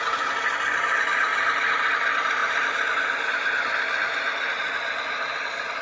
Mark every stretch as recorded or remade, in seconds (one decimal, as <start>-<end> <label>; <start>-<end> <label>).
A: 0.0-5.8 recorded